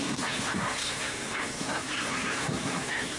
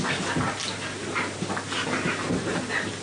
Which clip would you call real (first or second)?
second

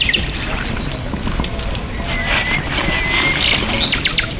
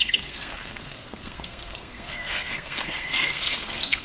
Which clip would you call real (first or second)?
first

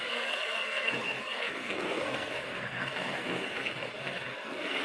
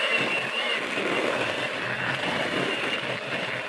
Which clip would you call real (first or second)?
second